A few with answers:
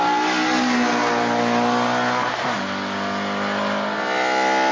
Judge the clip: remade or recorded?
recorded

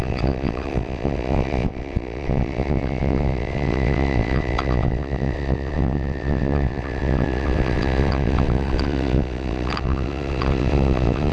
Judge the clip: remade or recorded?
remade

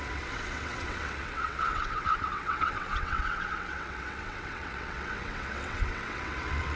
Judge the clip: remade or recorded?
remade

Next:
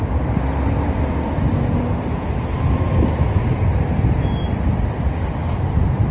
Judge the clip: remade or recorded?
recorded